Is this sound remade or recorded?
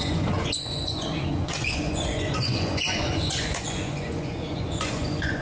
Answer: remade